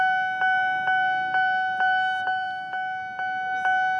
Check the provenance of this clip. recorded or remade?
recorded